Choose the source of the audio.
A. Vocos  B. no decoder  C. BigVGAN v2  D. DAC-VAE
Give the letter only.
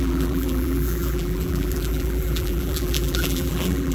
C